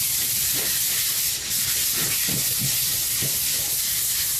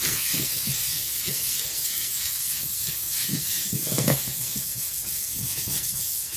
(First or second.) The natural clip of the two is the first